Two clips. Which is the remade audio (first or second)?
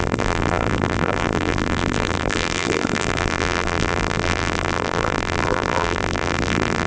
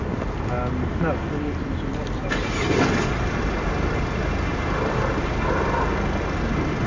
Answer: first